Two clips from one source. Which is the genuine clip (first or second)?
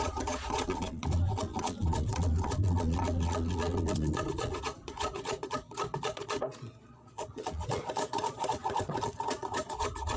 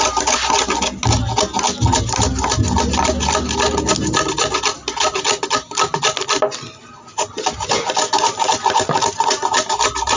second